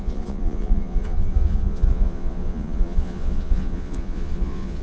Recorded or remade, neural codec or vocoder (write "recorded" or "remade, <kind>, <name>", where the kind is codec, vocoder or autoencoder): remade, vocoder, Vocos